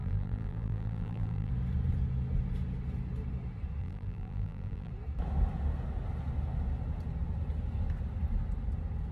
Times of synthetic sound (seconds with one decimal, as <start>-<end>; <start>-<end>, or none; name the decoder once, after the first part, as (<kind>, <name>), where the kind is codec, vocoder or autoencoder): 0.0-1.5 (vocoder, BigVGAN v2); 3.8-4.9